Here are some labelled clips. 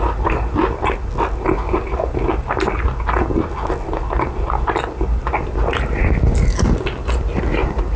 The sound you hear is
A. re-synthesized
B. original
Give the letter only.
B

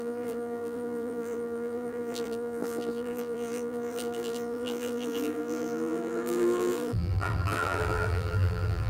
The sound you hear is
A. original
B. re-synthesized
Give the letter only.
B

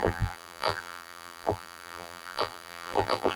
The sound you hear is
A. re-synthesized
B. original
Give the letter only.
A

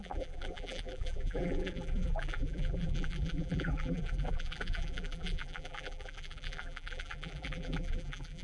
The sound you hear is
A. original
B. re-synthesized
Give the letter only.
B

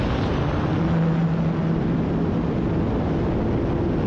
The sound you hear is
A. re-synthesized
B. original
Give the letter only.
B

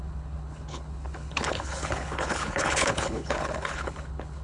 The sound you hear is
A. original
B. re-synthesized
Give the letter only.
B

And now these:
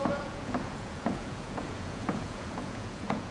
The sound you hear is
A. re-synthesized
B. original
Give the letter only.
A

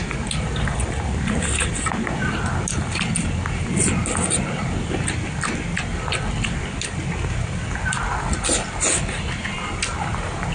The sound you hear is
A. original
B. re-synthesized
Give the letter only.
A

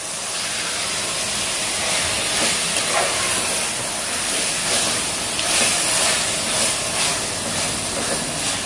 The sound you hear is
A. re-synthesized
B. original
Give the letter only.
B